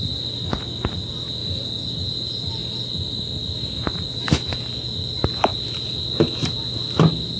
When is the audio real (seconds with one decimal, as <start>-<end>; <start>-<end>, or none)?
0.0-7.4